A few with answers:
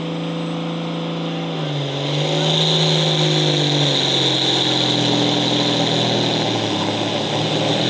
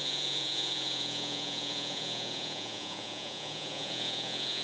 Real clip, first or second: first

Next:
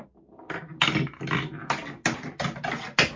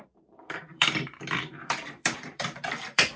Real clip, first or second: first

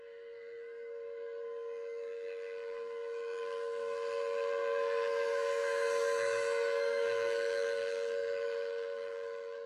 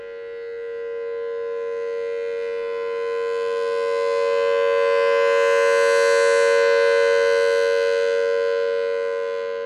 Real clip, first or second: second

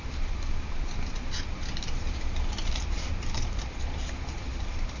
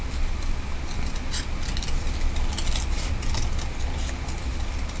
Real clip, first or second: second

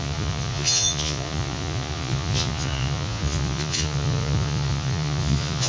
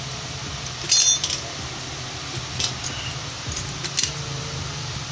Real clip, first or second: second